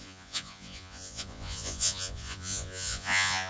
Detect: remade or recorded remade